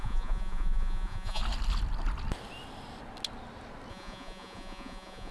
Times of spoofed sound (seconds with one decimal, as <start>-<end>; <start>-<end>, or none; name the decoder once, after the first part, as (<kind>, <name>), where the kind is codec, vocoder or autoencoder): 0.0-1.4 (vocoder, Vocos); 3.9-5.3